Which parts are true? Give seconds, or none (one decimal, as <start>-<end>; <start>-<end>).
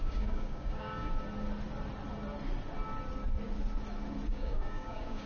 1.1-4.3